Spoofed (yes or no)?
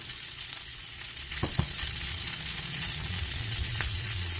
yes